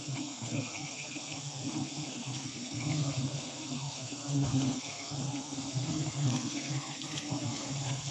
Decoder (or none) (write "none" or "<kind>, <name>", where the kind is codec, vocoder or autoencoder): codec, SNAC